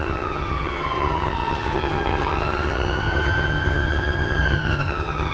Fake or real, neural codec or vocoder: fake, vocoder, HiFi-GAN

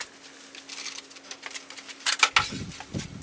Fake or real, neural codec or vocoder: real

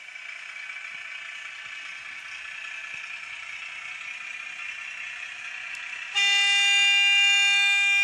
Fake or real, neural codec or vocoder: real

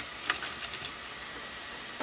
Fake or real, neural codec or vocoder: real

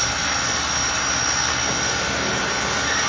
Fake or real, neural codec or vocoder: real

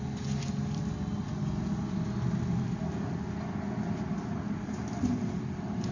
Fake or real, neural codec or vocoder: real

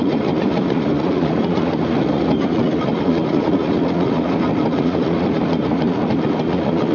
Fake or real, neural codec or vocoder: fake, vocoder, Vocos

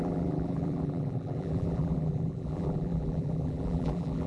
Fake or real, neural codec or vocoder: fake, vocoder, BigVGAN v2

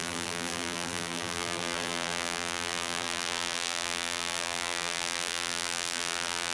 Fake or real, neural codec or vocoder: fake, vocoder, BigVGAN v2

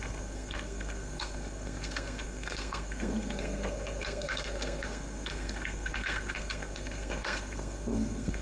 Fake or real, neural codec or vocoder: fake, codec, SNAC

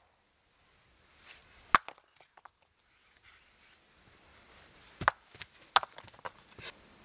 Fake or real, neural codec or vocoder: real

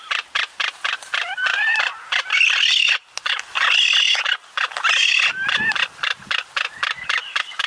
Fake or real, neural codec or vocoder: real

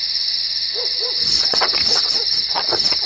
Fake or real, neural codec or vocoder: fake, vocoder, WaveNeXt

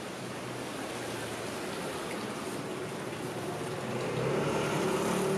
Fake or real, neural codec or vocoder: real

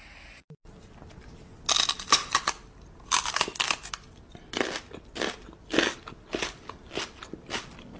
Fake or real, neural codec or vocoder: real